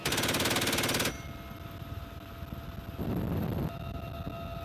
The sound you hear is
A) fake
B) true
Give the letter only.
B